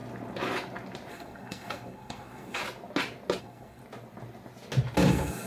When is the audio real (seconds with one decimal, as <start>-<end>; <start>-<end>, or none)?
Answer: 0.0-1.1; 2.6-3.4; 3.8-5.1